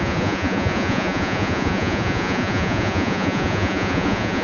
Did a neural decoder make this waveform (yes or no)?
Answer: yes